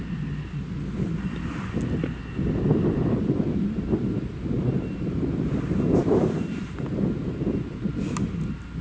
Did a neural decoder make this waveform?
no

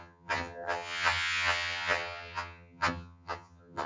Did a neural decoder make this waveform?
yes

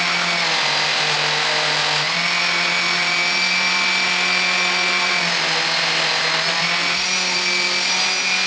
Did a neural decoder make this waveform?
no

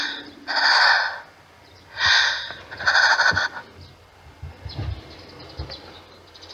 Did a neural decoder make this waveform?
no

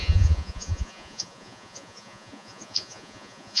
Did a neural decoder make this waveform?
yes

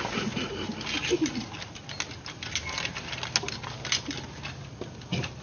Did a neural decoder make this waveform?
no